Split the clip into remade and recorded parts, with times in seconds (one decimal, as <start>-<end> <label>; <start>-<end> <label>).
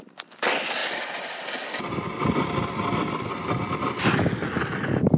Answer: 0.0-5.2 recorded